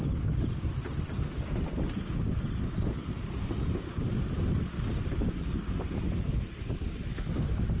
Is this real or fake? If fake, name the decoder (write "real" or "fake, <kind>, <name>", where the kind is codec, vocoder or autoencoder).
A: real